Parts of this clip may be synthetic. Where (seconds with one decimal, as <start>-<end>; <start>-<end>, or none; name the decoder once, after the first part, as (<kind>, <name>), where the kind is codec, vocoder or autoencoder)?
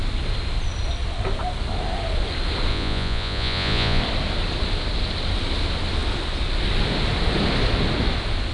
2.7-4.0 (vocoder, Vocos)